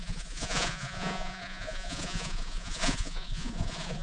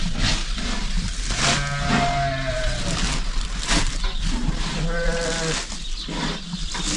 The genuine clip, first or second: second